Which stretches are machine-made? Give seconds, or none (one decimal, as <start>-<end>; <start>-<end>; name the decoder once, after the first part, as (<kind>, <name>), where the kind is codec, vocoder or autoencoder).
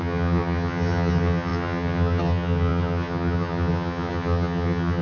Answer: 0.0-5.0 (vocoder, HiFi-GAN)